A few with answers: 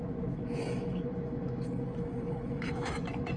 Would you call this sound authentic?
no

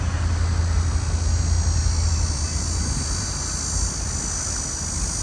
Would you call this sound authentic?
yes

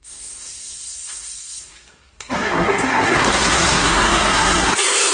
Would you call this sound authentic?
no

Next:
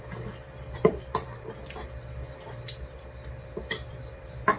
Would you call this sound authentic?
no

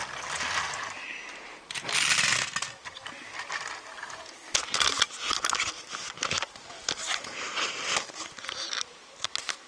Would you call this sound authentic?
yes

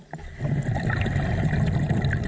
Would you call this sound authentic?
yes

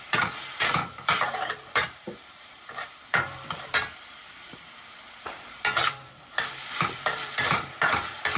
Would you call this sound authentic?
no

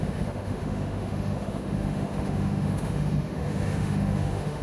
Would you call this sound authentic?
no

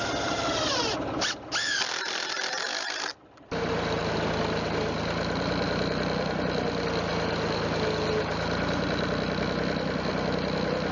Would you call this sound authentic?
yes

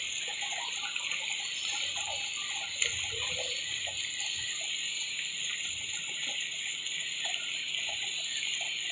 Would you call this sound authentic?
yes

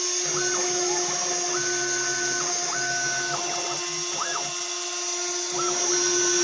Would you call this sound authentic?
yes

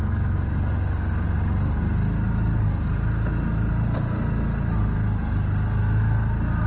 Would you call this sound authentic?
yes